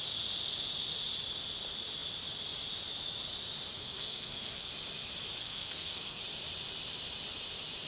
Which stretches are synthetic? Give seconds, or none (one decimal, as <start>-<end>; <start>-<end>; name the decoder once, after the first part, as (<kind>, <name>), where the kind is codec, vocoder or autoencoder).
3.8-4.7 (codec, SNAC); 5.4-6.2